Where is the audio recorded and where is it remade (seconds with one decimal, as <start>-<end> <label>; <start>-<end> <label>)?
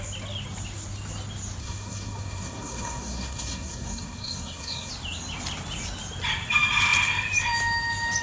0.0-1.6 recorded; 1.6-4.9 remade; 4.9-8.2 recorded